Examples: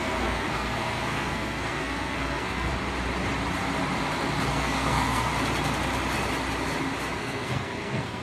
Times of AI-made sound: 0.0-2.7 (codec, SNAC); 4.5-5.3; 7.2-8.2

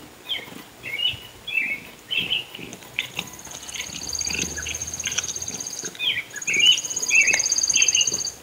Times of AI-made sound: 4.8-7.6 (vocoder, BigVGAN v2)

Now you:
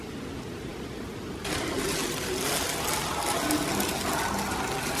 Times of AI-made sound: none

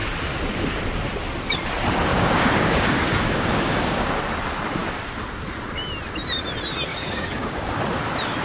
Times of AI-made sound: 2.1-4.2 (codec, DAC); 6.9-7.7

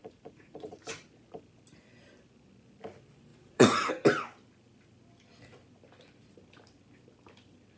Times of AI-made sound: 0.0-1.0 (vocoder, Vocos); 3.3-3.9

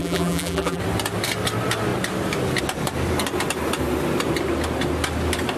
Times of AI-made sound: 0.0-0.8 (vocoder, BigVGAN v2)